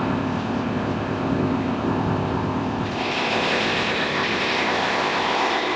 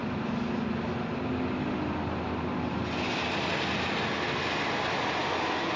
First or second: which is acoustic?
second